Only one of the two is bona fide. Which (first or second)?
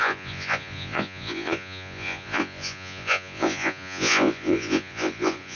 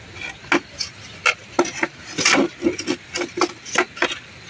second